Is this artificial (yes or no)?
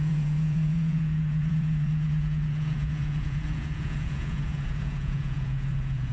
yes